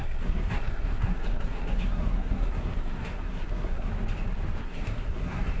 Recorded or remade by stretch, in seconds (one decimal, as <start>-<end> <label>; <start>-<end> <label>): 0.0-3.9 remade; 3.9-4.6 recorded; 4.6-5.6 remade